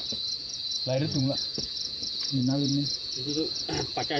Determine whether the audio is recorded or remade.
remade